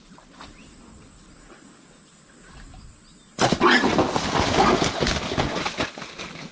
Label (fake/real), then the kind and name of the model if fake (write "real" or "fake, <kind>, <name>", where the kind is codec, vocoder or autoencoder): real